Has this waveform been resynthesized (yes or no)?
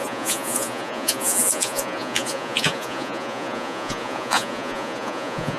yes